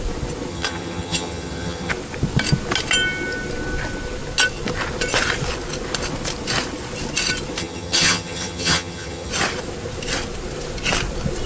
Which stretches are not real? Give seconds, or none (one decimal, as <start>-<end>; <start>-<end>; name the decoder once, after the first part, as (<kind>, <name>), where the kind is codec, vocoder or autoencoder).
0.5-1.9 (vocoder, HiFi-GAN); 7.6-9.3